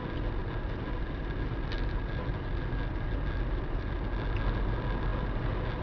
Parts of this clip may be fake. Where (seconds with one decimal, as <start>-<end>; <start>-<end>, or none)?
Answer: none